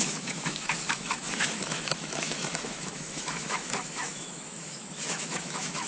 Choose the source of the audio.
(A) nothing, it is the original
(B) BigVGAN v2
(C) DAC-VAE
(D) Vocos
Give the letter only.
C